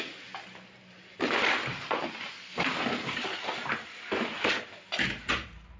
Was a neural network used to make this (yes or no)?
no